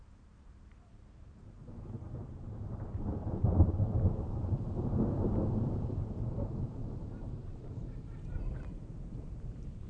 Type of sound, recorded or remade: remade